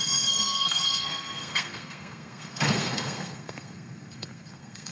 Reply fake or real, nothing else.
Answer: fake